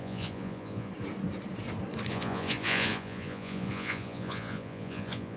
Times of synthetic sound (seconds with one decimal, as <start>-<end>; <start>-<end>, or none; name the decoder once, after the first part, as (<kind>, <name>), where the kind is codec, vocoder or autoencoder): 0.0-0.9 (vocoder, Vocos); 2.1-5.4